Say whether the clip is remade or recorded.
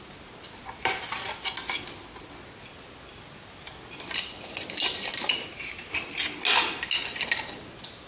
recorded